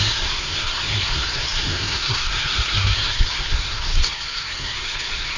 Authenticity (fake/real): fake